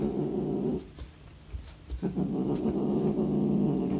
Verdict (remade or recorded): recorded